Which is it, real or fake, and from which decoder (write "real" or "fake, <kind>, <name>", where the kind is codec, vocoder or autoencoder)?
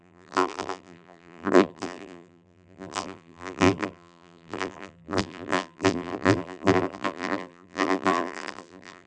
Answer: fake, vocoder, BigVGAN v2